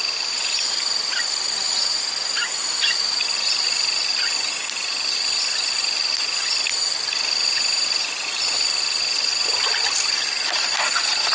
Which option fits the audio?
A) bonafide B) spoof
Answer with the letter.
A